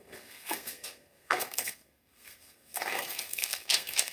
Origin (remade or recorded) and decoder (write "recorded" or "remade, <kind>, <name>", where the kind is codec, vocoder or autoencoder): remade, codec, SNAC